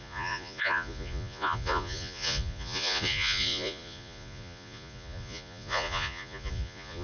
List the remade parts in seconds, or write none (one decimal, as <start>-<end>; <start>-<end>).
0.0-7.0